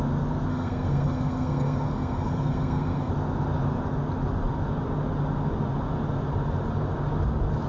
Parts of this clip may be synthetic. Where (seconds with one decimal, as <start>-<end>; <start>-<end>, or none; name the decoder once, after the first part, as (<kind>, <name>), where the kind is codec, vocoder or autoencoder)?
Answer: 0.5-3.1 (codec, SNAC)